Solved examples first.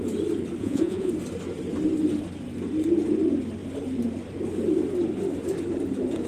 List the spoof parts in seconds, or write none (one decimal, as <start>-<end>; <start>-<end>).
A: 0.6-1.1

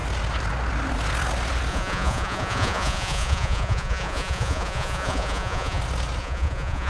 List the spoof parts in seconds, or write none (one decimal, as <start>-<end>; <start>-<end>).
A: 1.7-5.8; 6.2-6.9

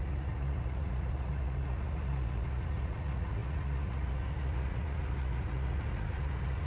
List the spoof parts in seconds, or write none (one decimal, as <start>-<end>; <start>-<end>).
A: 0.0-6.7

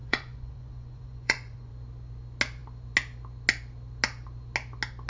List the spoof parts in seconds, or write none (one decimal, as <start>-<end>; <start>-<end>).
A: 0.0-1.7

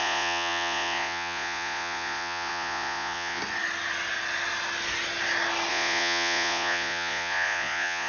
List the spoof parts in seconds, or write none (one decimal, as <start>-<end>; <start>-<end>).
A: 0.0-3.4; 5.7-8.1

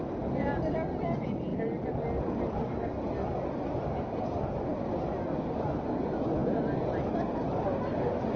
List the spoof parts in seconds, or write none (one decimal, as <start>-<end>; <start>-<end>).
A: none

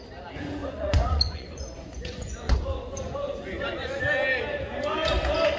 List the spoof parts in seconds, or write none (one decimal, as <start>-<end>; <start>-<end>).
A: 0.6-4.0